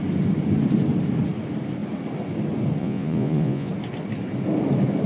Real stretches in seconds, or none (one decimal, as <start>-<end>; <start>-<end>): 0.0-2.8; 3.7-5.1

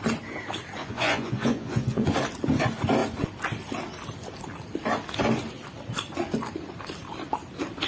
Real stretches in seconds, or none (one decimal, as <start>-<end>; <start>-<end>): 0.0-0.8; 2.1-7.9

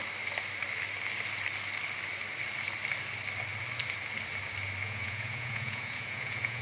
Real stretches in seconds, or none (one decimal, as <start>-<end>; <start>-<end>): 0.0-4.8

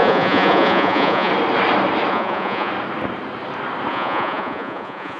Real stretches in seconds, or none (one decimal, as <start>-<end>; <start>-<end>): 1.3-2.1; 2.7-3.9

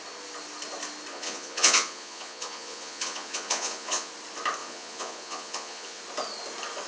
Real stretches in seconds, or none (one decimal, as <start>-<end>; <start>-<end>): 0.0-1.1; 4.1-4.6; 6.0-6.9

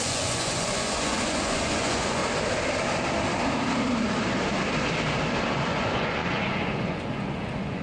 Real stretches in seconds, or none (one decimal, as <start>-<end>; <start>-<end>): 2.2-5.5

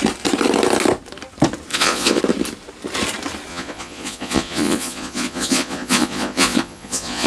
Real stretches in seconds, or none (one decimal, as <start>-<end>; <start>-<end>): 0.0-1.7; 2.2-3.5